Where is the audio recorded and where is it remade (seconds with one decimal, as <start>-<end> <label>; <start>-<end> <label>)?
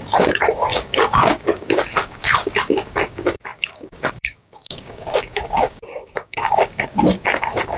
0.0-7.8 remade